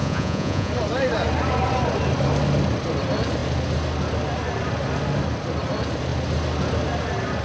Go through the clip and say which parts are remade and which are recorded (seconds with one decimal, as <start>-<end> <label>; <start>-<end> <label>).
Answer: 0.0-0.7 remade; 0.7-7.4 recorded